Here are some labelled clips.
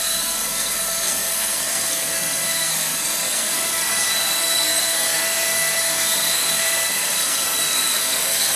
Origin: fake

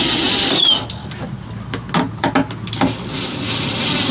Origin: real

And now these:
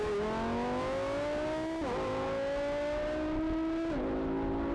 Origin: real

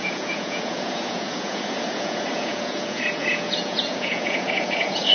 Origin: fake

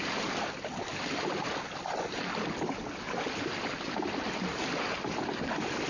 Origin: real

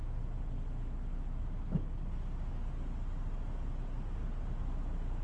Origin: real